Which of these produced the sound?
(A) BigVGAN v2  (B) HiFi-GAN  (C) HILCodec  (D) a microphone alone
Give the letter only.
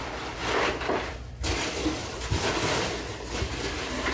A